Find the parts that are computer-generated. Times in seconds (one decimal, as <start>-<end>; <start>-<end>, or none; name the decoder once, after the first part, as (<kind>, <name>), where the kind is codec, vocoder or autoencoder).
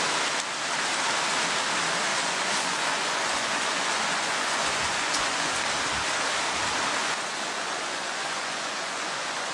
2.1-5.6 (vocoder, Vocos); 7.0-9.5